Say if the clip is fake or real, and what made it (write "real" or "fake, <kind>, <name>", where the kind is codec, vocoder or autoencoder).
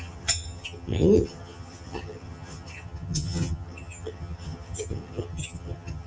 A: fake, vocoder, HiFi-GAN